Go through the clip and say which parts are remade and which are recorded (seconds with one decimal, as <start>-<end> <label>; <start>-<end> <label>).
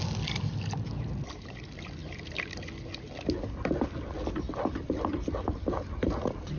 0.0-6.6 recorded